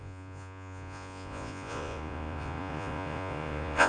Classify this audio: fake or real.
fake